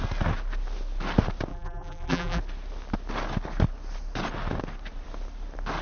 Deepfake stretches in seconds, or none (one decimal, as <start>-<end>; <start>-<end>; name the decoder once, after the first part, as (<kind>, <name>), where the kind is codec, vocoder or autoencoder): 1.5-2.4 (vocoder, BigVGAN v2)